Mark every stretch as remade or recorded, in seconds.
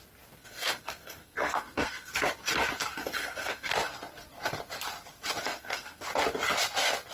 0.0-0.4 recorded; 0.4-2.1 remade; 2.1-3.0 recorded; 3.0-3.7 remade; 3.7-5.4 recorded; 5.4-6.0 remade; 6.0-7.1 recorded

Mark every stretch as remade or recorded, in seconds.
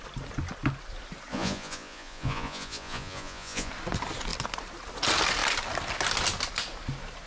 0.0-1.3 recorded; 1.3-3.7 remade; 3.7-7.3 recorded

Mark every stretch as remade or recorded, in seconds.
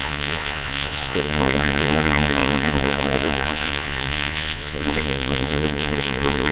0.0-6.5 remade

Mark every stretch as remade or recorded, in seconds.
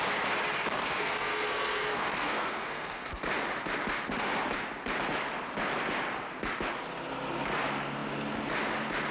0.0-0.8 recorded; 0.8-3.1 remade; 3.1-9.1 recorded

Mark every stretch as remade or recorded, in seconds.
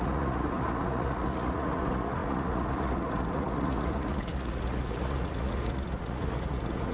0.0-6.9 remade